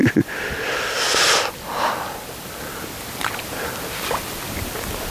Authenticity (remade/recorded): recorded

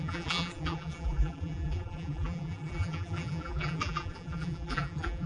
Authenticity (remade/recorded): remade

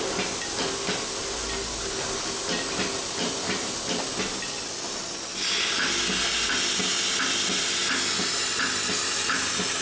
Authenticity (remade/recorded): recorded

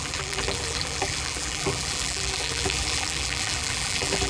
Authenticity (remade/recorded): remade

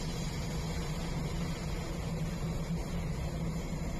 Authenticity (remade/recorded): recorded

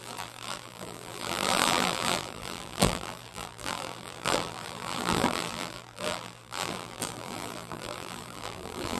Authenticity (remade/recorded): remade